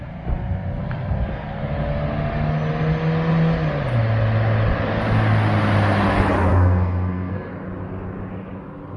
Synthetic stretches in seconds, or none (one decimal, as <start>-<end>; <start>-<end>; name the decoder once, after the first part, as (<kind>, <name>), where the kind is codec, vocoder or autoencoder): 6.5-7.5 (codec, SNAC)